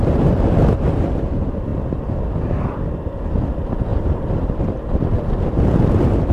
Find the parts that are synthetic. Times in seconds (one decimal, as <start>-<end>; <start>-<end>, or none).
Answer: 3.9-5.2